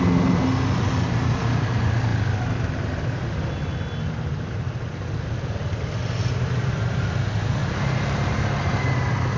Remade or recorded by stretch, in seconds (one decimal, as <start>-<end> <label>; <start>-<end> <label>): 0.0-7.6 recorded; 7.6-8.9 remade; 8.9-9.4 recorded